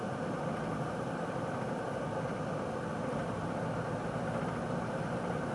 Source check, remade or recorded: recorded